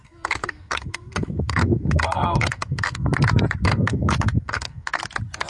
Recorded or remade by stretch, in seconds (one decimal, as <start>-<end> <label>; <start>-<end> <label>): 0.0-3.1 remade; 3.1-3.6 recorded; 3.6-5.0 remade; 5.0-5.5 recorded